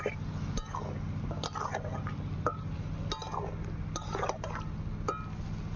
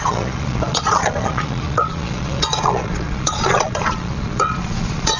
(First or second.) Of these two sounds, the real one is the first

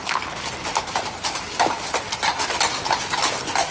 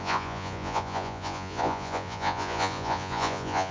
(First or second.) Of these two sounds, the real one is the first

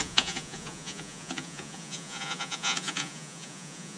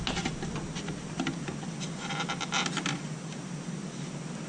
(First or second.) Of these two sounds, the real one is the second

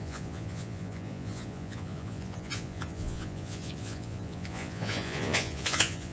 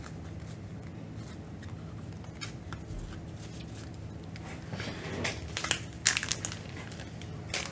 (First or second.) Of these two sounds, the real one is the second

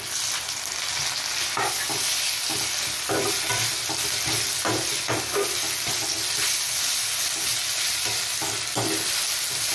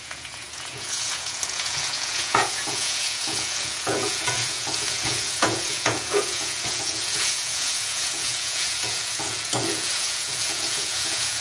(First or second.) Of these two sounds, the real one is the first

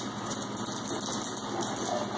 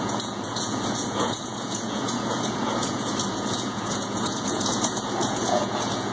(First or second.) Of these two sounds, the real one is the first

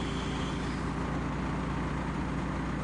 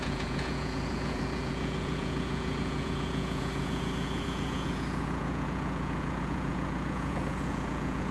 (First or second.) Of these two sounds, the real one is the first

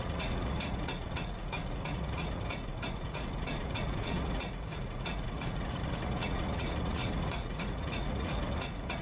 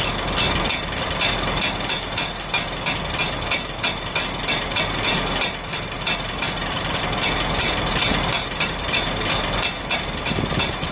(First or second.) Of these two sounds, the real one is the second